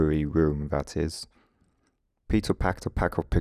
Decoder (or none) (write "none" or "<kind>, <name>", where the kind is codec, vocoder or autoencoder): none